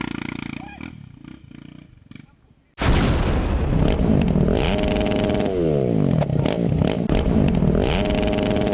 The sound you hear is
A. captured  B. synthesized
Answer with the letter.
A